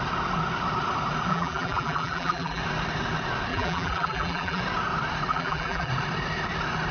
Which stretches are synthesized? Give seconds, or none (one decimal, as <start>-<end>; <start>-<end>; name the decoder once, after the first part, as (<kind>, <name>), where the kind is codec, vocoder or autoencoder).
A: 1.3-2.6 (vocoder, BigVGAN v2); 3.5-4.6; 5.3-5.9